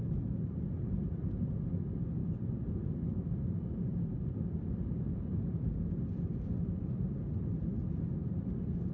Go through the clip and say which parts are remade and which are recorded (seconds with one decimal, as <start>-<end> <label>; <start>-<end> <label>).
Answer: 0.0-8.9 recorded